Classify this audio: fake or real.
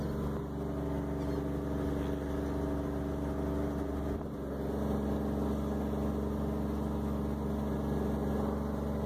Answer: real